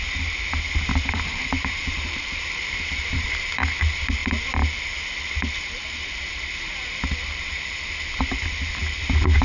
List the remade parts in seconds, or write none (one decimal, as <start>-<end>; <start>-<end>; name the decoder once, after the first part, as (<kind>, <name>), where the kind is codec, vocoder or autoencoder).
1.3-3.6 (vocoder, BigVGAN v2)